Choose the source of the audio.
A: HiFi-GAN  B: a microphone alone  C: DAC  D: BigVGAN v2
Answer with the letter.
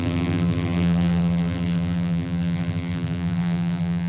D